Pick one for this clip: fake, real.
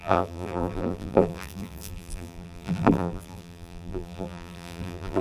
fake